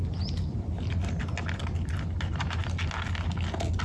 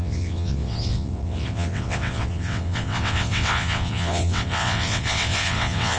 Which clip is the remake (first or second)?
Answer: second